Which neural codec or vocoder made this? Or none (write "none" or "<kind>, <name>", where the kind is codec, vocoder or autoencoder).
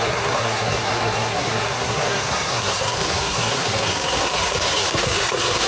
codec, SNAC